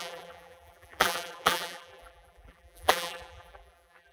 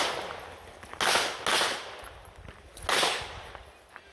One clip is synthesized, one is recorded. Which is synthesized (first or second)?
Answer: first